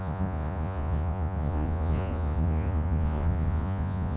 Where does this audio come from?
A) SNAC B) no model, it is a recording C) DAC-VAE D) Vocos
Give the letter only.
D